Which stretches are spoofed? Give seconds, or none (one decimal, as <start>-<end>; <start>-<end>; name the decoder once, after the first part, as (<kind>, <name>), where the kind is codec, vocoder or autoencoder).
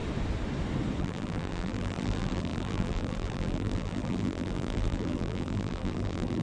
1.0-6.4 (vocoder, BigVGAN v2)